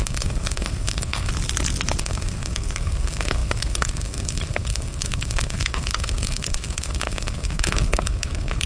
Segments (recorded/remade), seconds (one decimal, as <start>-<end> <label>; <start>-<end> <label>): 0.0-1.3 remade; 1.3-2.0 recorded; 2.0-8.7 remade